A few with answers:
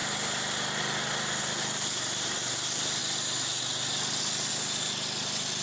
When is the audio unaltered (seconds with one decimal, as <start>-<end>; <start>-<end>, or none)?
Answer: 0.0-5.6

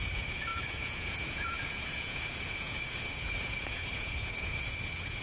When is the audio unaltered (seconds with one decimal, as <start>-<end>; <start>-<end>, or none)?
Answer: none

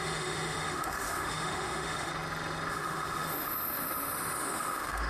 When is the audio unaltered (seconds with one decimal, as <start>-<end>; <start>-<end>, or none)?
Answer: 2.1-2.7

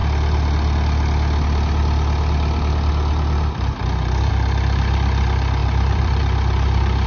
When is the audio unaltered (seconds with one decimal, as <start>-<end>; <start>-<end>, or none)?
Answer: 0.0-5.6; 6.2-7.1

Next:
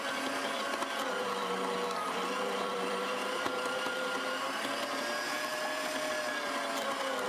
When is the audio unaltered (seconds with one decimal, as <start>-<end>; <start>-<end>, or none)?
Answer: 0.0-0.4; 4.0-5.5; 6.1-7.3

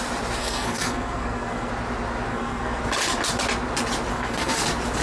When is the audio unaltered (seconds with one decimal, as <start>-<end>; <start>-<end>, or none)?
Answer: 0.0-0.4; 1.7-2.3; 2.8-4.1; 4.6-5.0

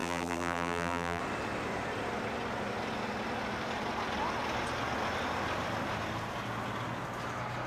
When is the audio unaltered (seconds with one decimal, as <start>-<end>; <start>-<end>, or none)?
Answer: 1.2-7.7

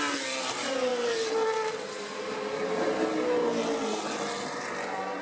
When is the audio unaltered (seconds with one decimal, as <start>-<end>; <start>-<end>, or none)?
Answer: 0.0-5.2